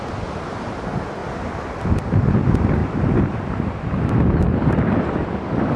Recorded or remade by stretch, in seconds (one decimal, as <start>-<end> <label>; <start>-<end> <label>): 0.0-1.2 remade; 1.2-1.9 recorded; 1.9-5.8 remade